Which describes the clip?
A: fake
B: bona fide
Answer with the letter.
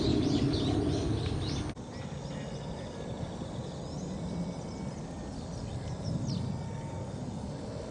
B